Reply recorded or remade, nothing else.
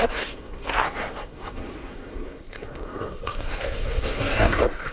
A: remade